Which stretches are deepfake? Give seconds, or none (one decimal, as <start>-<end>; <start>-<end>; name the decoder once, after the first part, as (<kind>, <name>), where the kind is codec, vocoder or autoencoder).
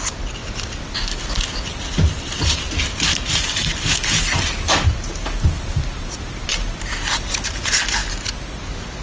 none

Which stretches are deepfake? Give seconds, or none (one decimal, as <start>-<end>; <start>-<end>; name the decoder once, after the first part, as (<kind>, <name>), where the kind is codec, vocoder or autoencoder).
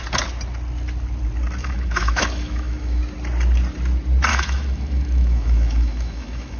1.6-3.0 (autoencoder, DAC-VAE); 4.3-6.6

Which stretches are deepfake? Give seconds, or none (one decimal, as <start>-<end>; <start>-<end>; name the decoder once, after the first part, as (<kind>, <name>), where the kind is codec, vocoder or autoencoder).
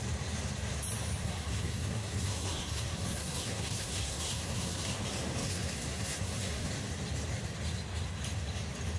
1.2-5.0 (codec, SNAC); 5.4-6.7